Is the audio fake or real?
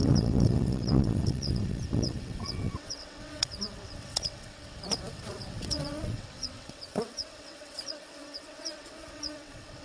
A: fake